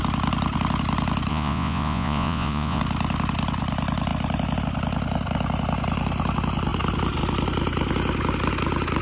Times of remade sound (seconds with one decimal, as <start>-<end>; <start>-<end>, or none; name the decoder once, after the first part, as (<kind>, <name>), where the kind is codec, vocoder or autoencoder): 1.3-2.8 (vocoder, Vocos)